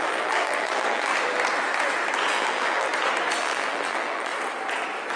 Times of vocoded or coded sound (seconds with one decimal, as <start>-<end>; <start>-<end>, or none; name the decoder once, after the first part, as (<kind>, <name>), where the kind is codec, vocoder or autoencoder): 0.0-1.1 (vocoder, BigVGAN v2); 2.3-2.9; 3.4-4.3